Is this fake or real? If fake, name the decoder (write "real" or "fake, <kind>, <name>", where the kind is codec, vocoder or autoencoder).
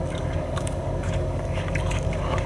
fake, codec, DAC